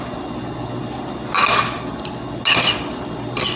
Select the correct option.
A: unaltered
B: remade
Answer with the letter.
A